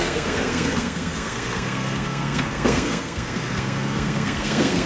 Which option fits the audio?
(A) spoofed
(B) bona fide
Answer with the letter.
A